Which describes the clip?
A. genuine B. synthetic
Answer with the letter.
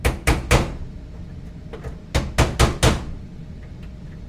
A